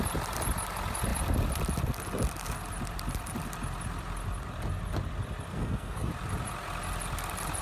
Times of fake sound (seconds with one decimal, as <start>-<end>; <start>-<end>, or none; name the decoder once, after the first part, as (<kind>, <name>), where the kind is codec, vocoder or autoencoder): 5.5-6.1 (codec, SNAC)